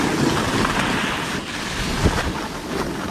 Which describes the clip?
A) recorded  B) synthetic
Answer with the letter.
A